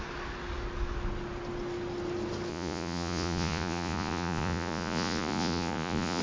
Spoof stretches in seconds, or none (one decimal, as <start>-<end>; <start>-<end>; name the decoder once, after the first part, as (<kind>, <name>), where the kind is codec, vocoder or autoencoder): 2.5-6.2 (vocoder, Vocos)